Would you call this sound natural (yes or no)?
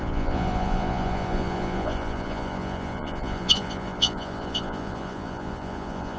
no